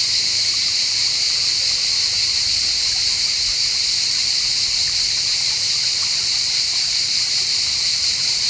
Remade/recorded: remade